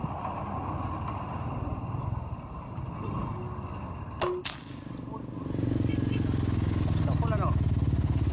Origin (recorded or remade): recorded